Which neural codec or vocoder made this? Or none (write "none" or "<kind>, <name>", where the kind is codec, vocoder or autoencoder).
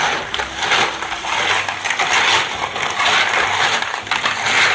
none